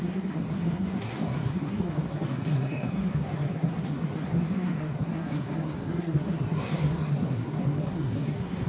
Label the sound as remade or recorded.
remade